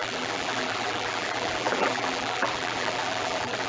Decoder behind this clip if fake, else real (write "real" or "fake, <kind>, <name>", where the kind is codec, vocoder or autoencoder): fake, vocoder, BigVGAN v2